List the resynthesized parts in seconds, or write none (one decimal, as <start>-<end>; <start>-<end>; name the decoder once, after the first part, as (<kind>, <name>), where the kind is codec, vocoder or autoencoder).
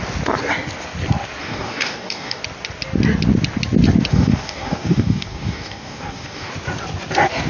1.4-2.4 (codec, DAC); 4.1-6.5